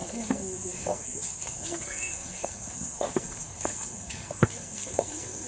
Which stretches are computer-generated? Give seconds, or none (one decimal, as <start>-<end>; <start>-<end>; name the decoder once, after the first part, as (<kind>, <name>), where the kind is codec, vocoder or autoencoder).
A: 0.0-5.5 (codec, SNAC)